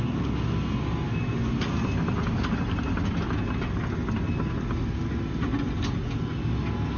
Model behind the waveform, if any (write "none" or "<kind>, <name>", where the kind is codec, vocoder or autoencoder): none